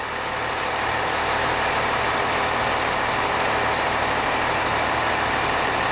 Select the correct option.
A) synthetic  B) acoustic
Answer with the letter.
B